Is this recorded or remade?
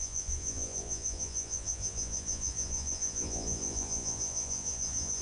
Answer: remade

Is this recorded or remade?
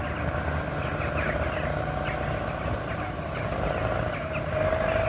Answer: recorded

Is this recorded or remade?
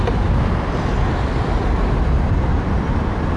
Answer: recorded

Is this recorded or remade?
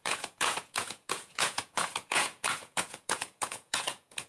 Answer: remade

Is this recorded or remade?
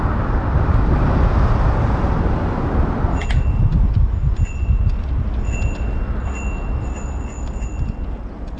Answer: recorded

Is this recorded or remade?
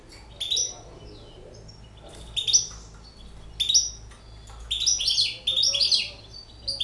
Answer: recorded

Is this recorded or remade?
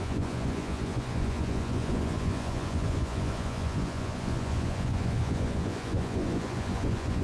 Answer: remade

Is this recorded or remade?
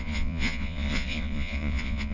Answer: remade